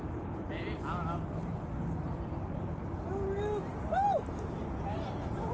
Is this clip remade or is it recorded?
recorded